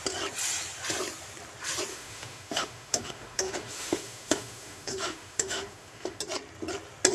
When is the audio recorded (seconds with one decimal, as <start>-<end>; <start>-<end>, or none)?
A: 0.0-1.9; 6.2-7.1